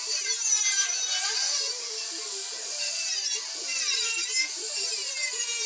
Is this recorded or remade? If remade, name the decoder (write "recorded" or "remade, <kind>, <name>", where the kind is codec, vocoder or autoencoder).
remade, vocoder, BigVGAN v2